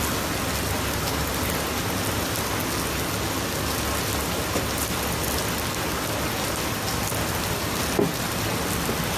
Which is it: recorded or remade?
recorded